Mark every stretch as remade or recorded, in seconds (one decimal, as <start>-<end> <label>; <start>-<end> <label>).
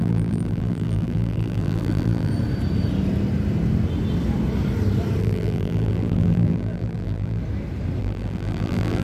0.0-2.3 remade; 2.3-5.2 recorded; 5.2-7.4 remade; 7.4-8.0 recorded; 8.0-9.0 remade